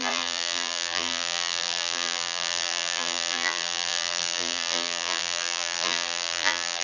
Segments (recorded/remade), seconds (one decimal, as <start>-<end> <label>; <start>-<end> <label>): 0.0-6.8 remade